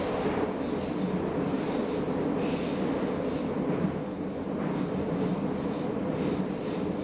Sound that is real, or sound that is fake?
real